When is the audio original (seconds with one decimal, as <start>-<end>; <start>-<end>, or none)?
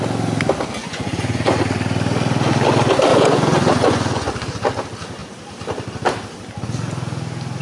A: 0.0-0.8; 1.6-3.1; 4.3-7.6